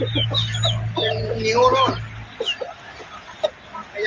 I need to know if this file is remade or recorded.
recorded